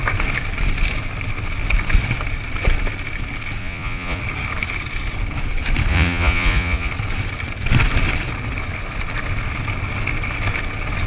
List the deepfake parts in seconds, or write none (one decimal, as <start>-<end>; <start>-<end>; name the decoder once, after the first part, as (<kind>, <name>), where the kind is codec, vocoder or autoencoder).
3.6-4.2 (vocoder, Vocos); 5.9-6.9